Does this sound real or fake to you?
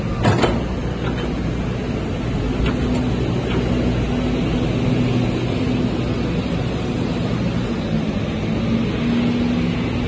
real